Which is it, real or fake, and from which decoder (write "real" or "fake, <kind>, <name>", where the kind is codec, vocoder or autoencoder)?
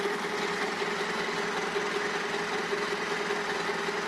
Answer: real